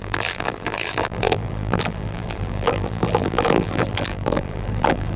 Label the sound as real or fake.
fake